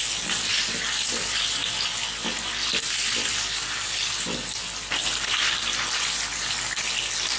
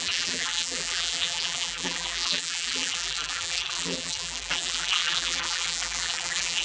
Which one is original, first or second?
first